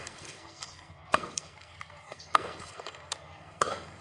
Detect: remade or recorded remade